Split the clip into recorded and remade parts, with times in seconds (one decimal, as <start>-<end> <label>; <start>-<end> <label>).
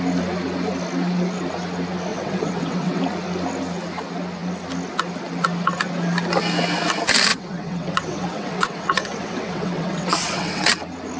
0.0-2.1 recorded; 2.1-3.0 remade; 3.0-7.3 recorded; 7.3-10.7 remade; 10.7-11.2 recorded